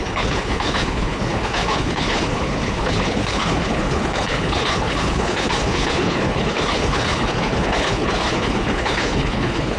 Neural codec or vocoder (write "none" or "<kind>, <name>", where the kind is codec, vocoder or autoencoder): codec, HILCodec